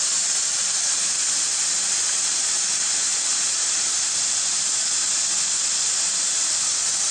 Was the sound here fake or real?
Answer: fake